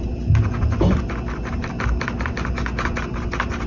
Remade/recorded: recorded